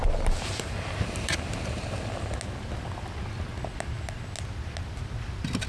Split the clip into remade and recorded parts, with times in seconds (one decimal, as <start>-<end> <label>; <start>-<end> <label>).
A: 0.0-1.8 remade; 1.8-5.7 recorded